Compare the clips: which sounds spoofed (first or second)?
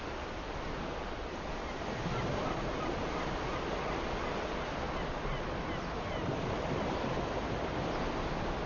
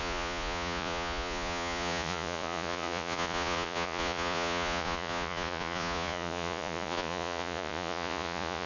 second